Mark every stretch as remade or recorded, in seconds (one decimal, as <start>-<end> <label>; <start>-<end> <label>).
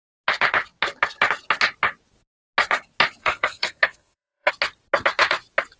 0.0-3.2 recorded; 3.2-4.5 remade; 4.5-5.8 recorded